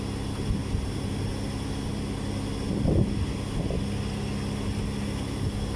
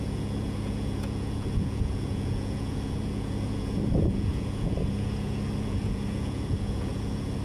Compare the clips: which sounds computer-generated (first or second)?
second